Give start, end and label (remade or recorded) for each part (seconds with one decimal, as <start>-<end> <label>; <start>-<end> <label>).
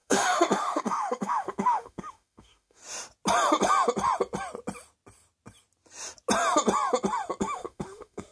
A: 0.0-2.8 remade; 2.8-7.4 recorded; 7.4-8.3 remade